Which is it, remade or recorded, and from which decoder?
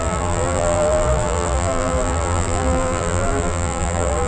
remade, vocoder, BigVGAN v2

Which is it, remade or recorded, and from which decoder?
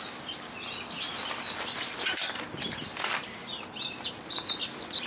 recorded